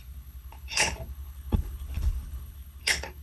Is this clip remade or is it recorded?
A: remade